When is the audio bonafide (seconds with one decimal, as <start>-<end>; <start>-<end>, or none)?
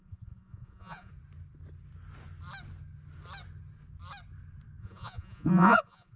1.1-4.8